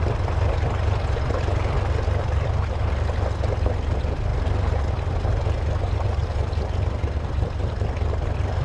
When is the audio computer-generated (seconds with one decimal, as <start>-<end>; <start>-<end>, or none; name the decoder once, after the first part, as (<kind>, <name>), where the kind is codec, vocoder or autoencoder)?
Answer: 6.2-7.9 (vocoder, BigVGAN v2)